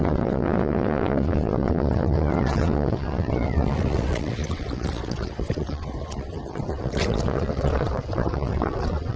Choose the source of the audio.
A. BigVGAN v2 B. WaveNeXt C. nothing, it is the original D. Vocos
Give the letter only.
B